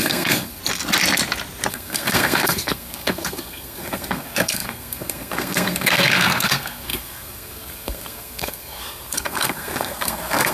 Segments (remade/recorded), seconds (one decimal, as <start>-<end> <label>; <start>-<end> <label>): 0.0-0.6 remade; 0.6-1.7 recorded; 1.7-10.5 remade